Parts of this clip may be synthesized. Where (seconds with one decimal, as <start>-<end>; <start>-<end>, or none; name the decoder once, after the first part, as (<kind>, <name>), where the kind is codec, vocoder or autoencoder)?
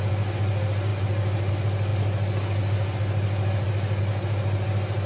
none